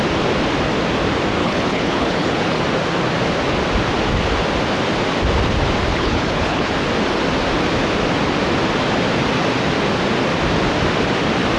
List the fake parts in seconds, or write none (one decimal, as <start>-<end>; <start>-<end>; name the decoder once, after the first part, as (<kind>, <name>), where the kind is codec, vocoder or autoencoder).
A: 1.4-2.6 (codec, HILCodec); 5.9-6.7